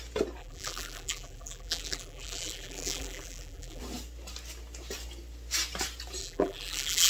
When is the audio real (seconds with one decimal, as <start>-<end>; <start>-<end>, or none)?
0.0-0.4; 3.8-6.2